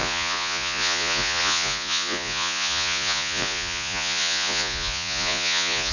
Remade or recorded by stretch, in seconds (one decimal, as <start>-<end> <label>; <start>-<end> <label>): 0.0-5.9 remade